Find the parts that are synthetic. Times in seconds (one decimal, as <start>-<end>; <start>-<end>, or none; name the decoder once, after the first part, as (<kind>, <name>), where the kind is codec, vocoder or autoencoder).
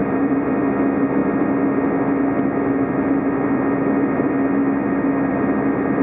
0.0-0.5 (vocoder, BigVGAN v2)